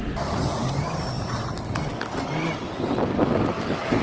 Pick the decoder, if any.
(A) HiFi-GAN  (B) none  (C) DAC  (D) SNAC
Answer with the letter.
B